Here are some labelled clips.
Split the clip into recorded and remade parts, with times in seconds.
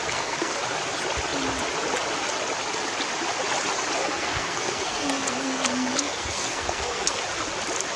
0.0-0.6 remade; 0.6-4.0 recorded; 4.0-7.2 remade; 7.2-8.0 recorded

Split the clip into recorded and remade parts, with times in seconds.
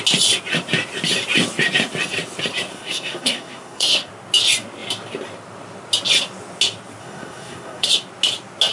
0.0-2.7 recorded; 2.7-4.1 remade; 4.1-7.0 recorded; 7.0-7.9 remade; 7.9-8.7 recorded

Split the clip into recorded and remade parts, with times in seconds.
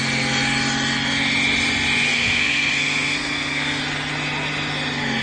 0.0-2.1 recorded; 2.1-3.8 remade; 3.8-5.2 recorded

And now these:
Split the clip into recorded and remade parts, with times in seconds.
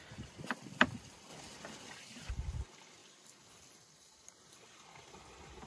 0.0-5.7 recorded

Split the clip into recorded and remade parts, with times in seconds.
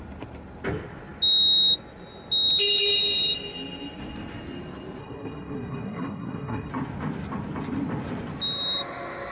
0.0-5.0 recorded; 5.0-6.7 remade; 6.7-9.3 recorded